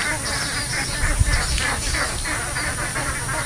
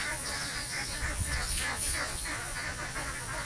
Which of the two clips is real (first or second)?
first